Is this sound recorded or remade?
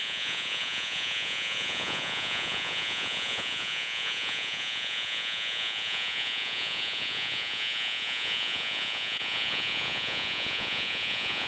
remade